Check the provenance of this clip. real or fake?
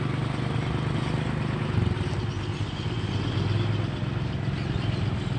real